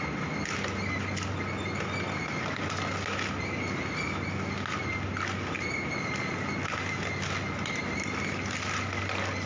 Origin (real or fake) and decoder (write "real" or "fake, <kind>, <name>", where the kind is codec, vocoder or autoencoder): real